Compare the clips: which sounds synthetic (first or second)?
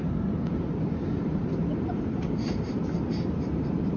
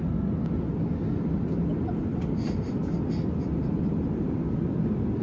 first